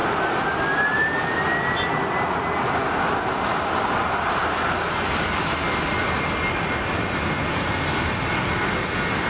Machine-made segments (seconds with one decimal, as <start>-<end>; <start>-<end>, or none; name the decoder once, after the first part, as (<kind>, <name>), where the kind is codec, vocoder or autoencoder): none